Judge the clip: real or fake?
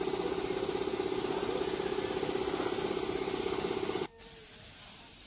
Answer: real